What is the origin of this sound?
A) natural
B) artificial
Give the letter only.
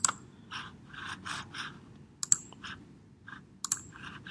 A